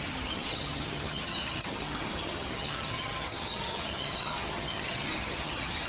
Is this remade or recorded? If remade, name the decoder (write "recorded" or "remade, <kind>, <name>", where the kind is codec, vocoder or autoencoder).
remade, vocoder, HiFi-GAN